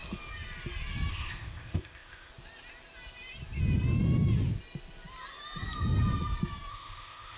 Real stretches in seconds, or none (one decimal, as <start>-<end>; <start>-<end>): 0.0-1.1; 2.3-6.7